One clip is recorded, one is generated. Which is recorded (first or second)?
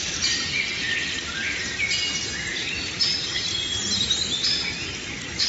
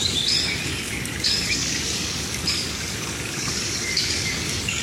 first